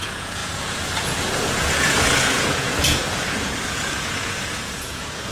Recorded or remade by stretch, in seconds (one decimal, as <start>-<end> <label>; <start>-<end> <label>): 0.0-5.3 remade